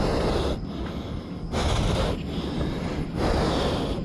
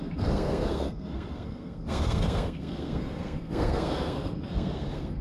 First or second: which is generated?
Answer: second